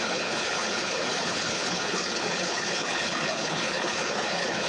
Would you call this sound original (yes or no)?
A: no